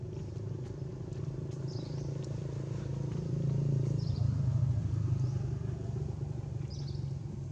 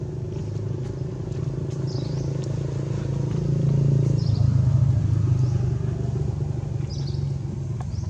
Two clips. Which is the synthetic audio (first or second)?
first